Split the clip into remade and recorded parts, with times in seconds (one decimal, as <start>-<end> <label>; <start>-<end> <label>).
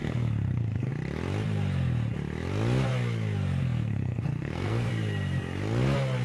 0.0-0.9 remade; 0.9-3.6 recorded; 3.6-4.9 remade; 4.9-6.2 recorded